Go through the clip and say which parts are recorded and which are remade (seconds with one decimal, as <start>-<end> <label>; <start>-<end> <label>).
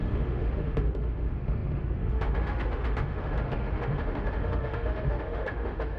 0.0-6.0 remade